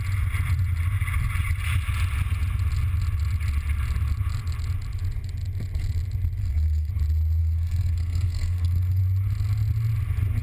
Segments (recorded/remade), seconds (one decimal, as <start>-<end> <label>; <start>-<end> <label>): 0.0-6.4 recorded; 6.4-6.9 remade; 6.9-7.4 recorded; 7.4-9.0 remade; 9.0-10.4 recorded